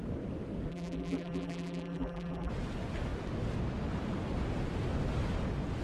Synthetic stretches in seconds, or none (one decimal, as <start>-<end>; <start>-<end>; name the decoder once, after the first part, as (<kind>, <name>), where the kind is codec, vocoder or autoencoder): 0.7-2.5 (vocoder, BigVGAN v2)